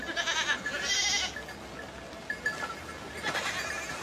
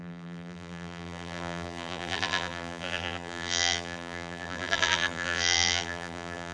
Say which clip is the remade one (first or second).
second